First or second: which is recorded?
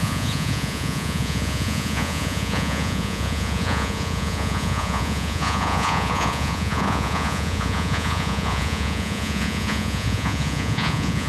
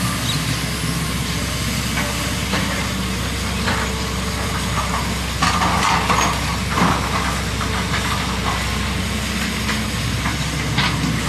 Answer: second